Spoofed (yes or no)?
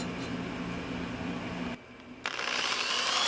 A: no